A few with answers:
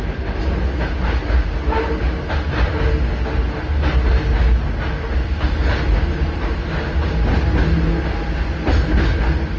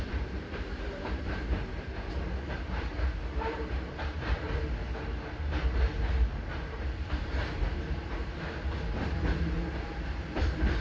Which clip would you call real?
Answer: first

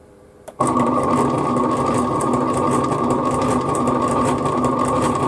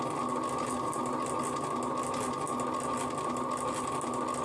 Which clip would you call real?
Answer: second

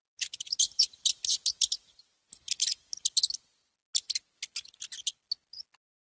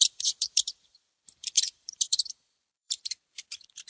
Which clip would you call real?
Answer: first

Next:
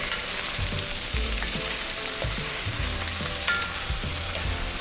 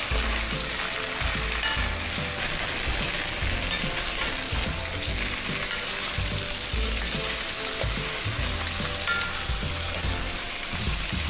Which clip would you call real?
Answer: second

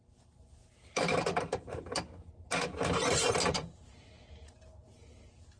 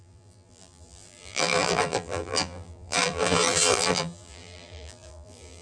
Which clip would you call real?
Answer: first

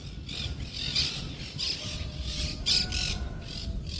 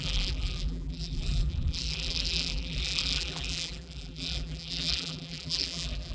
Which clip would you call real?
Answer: first